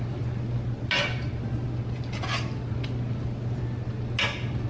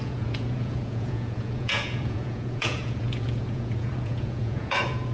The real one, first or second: first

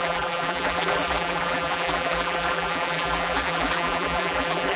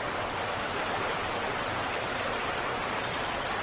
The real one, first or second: second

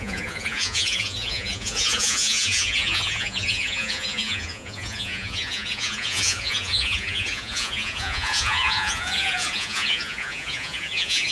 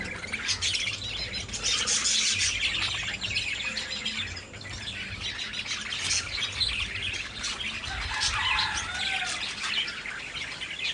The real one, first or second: second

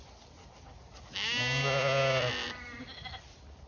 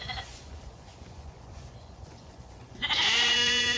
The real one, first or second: first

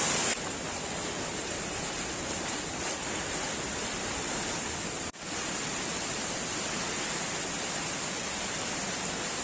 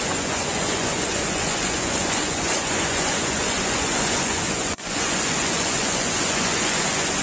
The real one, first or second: first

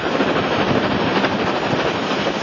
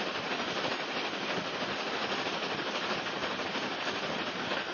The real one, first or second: first